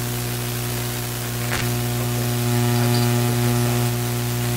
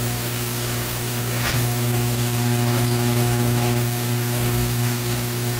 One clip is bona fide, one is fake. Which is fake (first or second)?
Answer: second